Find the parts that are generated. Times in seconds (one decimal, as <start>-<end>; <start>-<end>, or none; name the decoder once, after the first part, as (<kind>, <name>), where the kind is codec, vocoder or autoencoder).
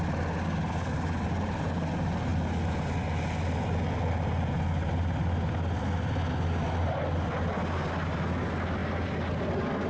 none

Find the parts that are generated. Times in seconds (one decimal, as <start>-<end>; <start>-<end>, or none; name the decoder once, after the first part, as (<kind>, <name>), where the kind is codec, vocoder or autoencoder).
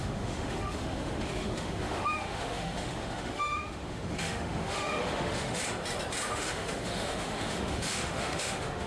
0.0-5.6 (autoencoder, DAC-VAE); 6.3-8.9